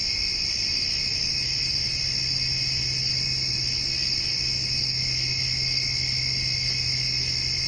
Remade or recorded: recorded